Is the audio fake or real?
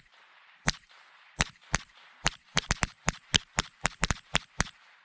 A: fake